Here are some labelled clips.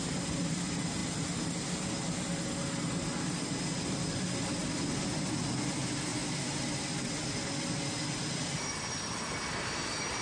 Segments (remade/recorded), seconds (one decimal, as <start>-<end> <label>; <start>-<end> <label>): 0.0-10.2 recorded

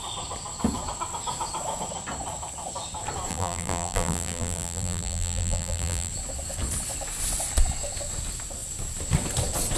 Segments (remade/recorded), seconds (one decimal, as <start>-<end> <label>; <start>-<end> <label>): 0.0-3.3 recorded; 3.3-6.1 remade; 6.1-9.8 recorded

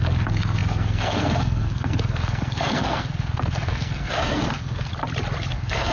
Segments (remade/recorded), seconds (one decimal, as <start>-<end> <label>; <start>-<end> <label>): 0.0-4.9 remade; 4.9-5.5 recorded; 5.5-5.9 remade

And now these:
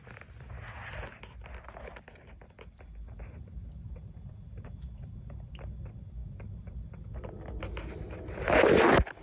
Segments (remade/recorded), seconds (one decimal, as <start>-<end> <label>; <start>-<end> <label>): 0.0-9.2 recorded